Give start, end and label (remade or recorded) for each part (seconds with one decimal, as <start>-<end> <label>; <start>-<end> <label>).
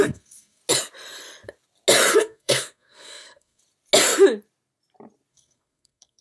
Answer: 0.0-0.6 remade; 0.6-2.1 recorded; 2.1-3.6 remade; 3.6-5.3 recorded; 5.3-6.2 remade